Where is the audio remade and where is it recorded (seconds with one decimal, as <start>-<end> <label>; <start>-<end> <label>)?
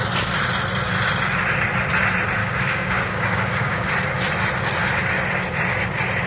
0.0-2.4 recorded; 2.4-3.9 remade; 3.9-6.3 recorded